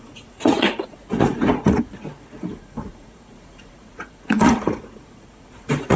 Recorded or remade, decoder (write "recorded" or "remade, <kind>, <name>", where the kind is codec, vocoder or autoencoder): remade, vocoder, Vocos